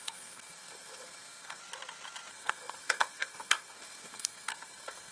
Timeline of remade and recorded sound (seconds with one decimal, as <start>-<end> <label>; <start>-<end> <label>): 0.0-1.6 remade; 1.6-2.3 recorded; 2.3-5.1 remade